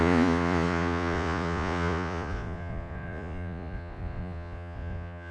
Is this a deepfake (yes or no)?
yes